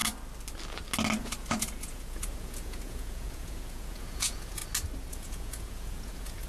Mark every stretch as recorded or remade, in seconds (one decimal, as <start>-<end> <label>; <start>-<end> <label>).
0.0-1.2 recorded; 1.2-4.6 remade; 4.6-5.1 recorded; 5.1-6.5 remade

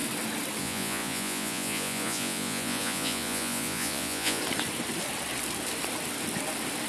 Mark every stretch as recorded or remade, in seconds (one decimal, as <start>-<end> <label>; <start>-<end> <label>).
0.0-0.6 recorded; 0.6-4.4 remade; 4.4-6.9 recorded

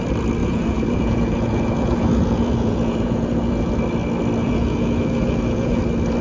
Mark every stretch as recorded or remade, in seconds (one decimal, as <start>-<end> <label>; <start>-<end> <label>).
0.0-0.4 recorded; 0.4-3.7 remade; 3.7-4.4 recorded; 4.4-5.8 remade; 5.8-6.2 recorded

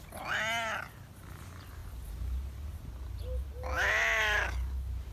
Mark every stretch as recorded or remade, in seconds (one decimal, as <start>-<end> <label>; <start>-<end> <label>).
0.0-5.1 recorded

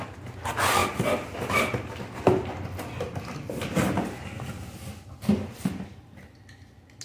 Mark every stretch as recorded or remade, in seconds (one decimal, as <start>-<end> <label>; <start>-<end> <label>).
0.0-7.0 recorded

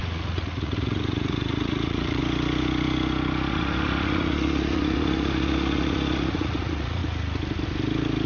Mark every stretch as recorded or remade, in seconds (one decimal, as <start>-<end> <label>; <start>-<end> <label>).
0.0-2.2 remade; 2.2-3.5 recorded; 3.5-7.0 remade; 7.0-8.3 recorded

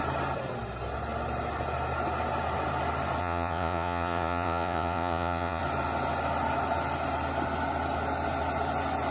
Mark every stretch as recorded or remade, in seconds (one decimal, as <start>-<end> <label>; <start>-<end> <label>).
0.0-3.2 recorded; 3.2-5.6 remade; 5.6-9.1 recorded

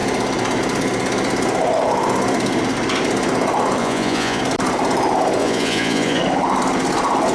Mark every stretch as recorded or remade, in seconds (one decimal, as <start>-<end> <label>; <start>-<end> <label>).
0.0-3.8 recorded; 3.8-4.4 remade; 4.4-5.4 recorded; 5.4-6.2 remade; 6.2-7.3 recorded